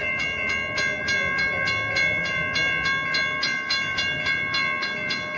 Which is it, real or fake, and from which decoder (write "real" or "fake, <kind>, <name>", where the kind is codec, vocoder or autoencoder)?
real